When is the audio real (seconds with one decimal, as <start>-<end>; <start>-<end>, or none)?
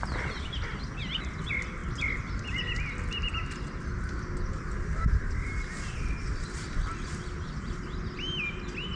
0.0-9.0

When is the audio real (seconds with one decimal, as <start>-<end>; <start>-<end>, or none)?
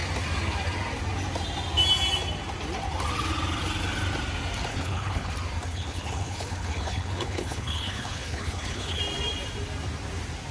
0.0-4.7; 5.3-5.7; 9.0-10.5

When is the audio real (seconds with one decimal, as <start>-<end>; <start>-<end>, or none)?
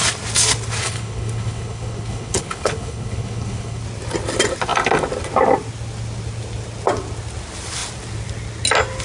0.0-0.8; 3.8-9.0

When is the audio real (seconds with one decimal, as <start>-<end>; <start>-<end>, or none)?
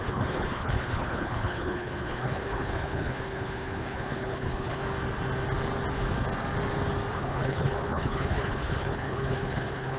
4.8-7.1